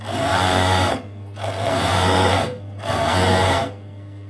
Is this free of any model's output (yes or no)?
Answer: no